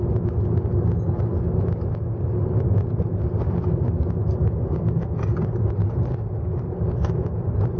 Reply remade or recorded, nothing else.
recorded